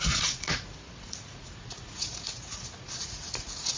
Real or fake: fake